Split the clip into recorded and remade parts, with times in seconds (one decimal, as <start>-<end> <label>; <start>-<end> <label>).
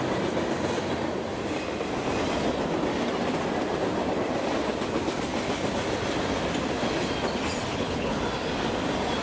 0.0-7.7 recorded; 7.7-8.2 remade; 8.2-9.2 recorded